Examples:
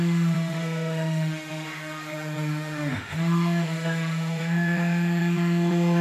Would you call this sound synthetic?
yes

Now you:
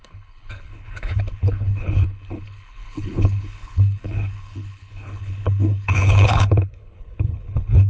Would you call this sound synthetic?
yes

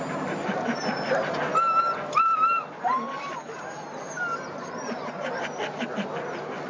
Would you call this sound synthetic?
no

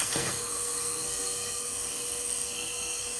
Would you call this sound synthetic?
yes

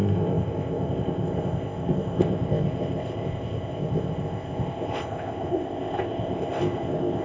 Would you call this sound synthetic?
yes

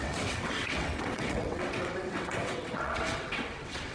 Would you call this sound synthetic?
yes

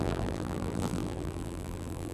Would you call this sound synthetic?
yes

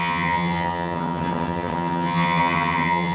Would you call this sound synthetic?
yes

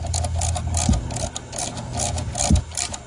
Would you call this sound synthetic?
no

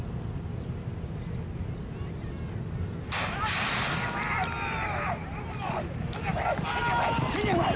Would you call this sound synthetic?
no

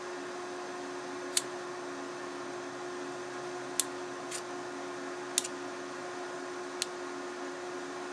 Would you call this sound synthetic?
no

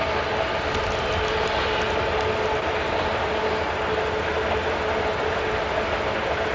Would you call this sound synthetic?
no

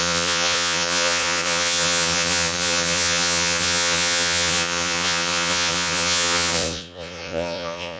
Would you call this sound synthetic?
yes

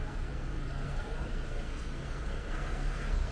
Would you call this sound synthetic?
yes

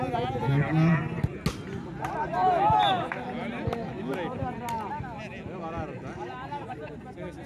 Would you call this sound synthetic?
no